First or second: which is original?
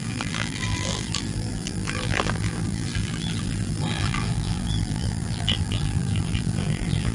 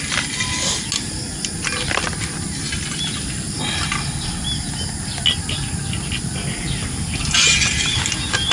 second